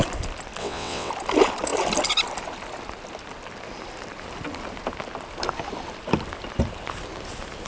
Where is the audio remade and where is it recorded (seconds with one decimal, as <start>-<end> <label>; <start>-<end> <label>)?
0.0-0.6 recorded; 0.6-1.1 remade; 1.1-7.7 recorded